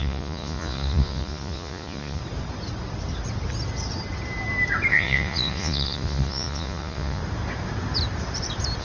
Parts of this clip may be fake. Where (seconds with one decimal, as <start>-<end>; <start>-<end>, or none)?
0.0-2.2; 4.9-7.2

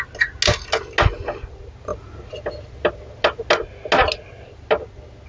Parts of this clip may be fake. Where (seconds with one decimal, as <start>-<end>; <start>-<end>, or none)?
none

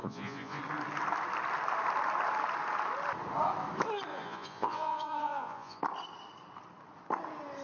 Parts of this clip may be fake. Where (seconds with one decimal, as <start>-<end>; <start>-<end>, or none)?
0.0-0.6; 4.1-5.8

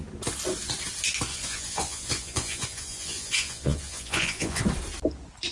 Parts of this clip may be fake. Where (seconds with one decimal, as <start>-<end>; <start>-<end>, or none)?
1.3-4.6

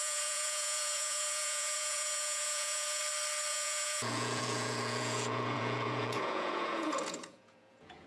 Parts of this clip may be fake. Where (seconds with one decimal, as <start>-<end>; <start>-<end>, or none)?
0.0-3.0; 3.5-8.1

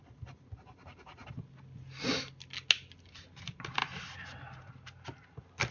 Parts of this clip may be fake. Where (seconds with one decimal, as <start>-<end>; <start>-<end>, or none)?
none